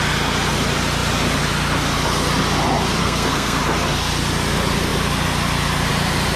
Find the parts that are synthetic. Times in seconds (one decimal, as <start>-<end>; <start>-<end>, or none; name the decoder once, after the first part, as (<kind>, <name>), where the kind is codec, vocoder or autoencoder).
3.0-3.6 (codec, SNAC)

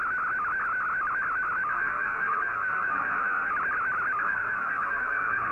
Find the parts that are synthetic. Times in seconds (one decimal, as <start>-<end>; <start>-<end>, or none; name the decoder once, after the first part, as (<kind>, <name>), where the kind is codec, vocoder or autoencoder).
1.7-3.5 (codec, SNAC); 4.2-5.5

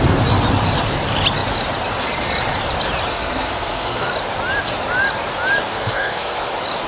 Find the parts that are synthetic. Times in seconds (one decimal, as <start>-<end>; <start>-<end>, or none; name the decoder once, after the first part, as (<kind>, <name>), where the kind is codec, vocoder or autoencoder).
3.1-4.1 (codec, SNAC); 5.7-6.5

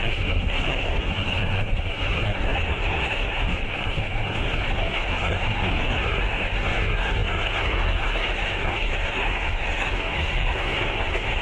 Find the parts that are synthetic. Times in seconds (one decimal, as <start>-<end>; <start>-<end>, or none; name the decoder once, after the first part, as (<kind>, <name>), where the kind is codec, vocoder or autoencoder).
0.0-11.4 (codec, SNAC)